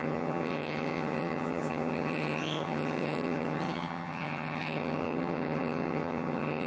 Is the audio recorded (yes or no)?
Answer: no